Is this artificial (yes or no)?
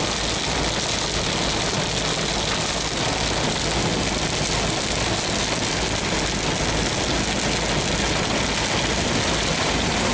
no